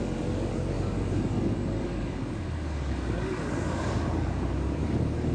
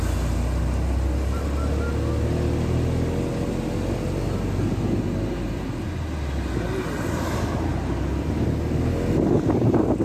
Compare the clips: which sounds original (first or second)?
second